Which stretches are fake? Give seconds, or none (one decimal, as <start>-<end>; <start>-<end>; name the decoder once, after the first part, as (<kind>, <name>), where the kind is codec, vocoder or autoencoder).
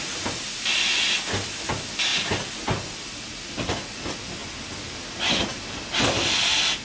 none